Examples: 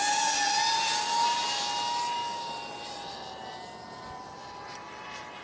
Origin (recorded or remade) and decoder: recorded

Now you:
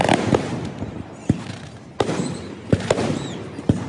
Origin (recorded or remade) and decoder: remade, vocoder, BigVGAN v2